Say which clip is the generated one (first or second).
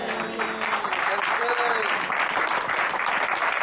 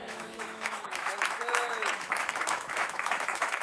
second